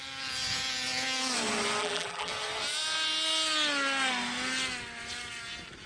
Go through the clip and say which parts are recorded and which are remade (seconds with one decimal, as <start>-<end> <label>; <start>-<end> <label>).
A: 0.0-1.8 recorded; 1.8-2.3 remade; 2.3-5.9 recorded